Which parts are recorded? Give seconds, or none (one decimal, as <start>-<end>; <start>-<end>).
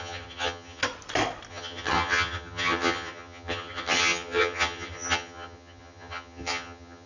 0.8-1.5